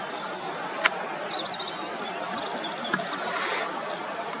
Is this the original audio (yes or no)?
yes